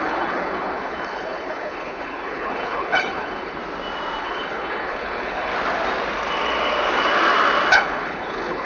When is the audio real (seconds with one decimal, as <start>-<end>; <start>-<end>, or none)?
3.6-4.2; 5.5-7.7